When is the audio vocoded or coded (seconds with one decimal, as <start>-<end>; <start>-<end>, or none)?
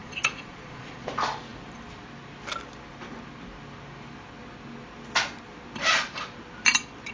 0.0-1.1